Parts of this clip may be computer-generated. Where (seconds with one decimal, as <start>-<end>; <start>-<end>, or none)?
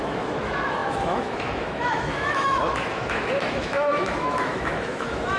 0.0-5.4